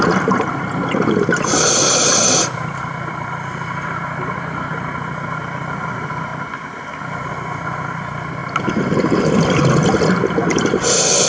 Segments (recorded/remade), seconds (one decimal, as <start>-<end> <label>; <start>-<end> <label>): 0.0-6.3 remade; 6.3-7.1 recorded; 7.1-8.4 remade; 8.4-9.2 recorded; 9.2-11.3 remade